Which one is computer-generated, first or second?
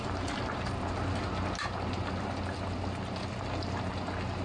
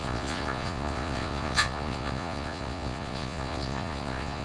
second